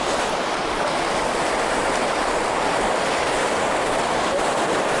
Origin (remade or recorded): recorded